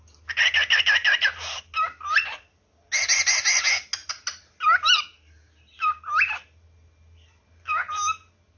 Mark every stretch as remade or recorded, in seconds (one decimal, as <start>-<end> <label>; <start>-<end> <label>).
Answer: 0.0-8.6 recorded